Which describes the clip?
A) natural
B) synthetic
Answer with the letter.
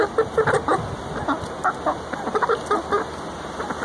A